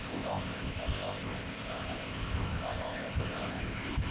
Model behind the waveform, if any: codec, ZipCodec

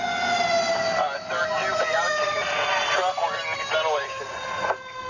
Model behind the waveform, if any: none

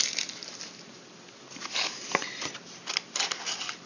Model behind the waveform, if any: none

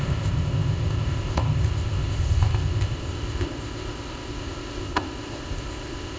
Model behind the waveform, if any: codec, ZipCodec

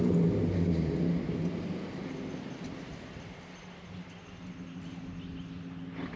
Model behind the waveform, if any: none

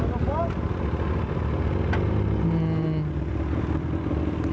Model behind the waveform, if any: none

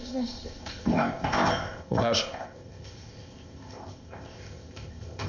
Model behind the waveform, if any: codec, ZipCodec